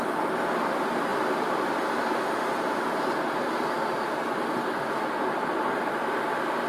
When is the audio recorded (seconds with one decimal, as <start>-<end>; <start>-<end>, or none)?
0.0-6.7

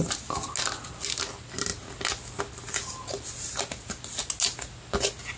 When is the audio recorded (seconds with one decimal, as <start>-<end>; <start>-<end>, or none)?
0.0-5.4

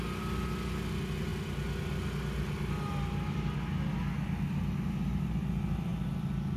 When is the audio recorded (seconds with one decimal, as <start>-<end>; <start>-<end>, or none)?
0.0-6.6